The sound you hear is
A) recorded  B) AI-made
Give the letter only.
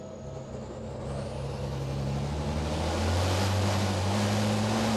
A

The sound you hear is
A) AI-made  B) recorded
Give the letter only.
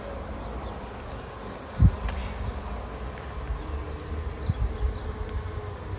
B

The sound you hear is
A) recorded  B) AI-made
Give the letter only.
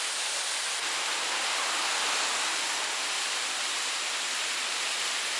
A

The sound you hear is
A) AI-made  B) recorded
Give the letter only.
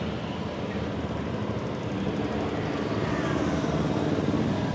B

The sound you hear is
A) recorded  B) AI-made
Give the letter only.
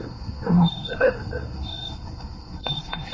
B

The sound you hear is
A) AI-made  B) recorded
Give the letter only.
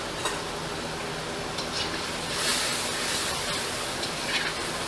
B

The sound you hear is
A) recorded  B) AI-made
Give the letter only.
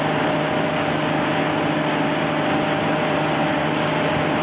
A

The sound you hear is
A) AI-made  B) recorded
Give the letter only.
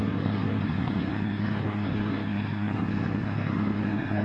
A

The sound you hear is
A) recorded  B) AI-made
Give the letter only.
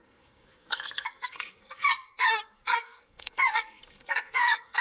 B